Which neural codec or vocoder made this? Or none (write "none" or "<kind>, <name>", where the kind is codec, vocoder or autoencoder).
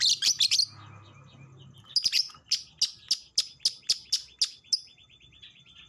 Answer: none